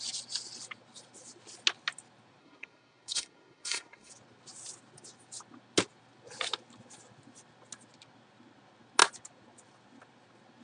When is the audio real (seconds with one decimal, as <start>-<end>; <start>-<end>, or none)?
0.0-2.4; 4.1-10.6